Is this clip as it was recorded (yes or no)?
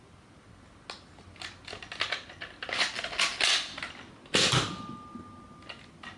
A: yes